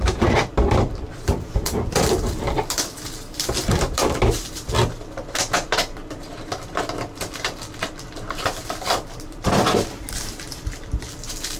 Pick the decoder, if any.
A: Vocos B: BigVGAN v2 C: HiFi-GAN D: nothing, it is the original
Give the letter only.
B